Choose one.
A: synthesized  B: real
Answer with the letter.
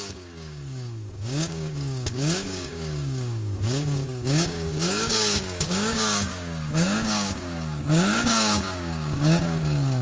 A